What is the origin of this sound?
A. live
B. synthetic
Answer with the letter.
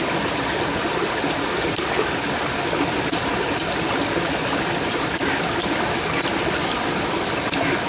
A